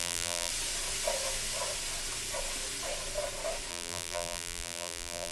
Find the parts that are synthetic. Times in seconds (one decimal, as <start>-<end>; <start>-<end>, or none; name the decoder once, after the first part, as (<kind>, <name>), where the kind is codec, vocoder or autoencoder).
0.0-0.5 (vocoder, BigVGAN v2); 3.7-5.3